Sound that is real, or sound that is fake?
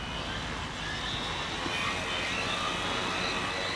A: real